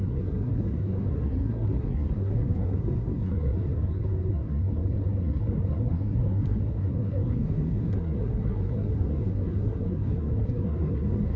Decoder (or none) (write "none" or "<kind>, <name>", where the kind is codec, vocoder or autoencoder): codec, SNAC